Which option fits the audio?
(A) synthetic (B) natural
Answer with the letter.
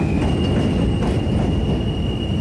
B